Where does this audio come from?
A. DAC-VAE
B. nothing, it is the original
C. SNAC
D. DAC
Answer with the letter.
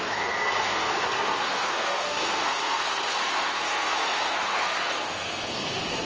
C